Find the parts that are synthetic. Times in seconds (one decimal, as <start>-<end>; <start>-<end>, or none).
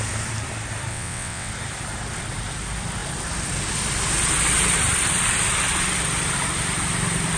0.9-1.5